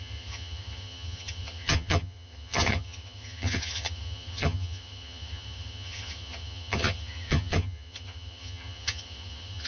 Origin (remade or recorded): remade